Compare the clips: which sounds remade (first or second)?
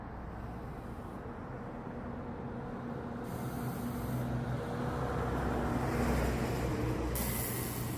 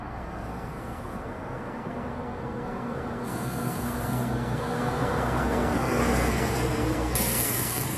second